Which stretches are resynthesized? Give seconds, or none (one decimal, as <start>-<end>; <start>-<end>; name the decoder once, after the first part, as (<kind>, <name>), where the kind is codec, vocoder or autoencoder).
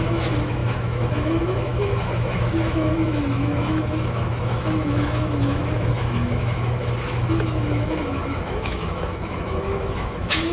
0.0-10.5 (autoencoder, DAC-VAE)